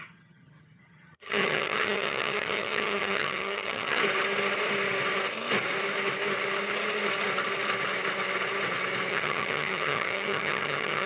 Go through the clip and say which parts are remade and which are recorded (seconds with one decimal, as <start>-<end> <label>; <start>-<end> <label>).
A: 0.0-4.0 remade; 4.0-9.1 recorded; 9.1-11.1 remade